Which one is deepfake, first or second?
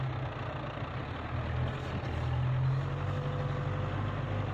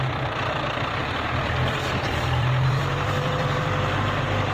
second